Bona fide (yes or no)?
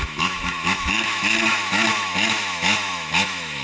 no